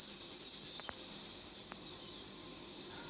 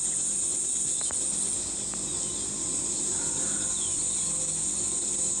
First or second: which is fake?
first